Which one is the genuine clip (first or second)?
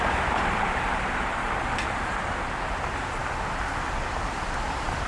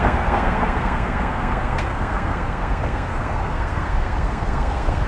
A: first